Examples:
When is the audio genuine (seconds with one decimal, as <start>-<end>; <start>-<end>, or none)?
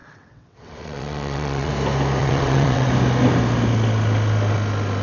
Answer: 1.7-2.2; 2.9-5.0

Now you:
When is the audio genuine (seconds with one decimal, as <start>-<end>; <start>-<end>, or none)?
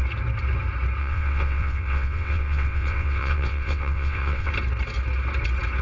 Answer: 0.0-1.0; 4.5-5.8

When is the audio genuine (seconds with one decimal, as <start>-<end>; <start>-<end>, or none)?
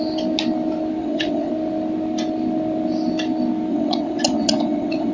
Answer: 0.0-1.0; 1.5-3.7